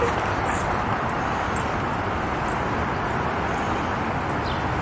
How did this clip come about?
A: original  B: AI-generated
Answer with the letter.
A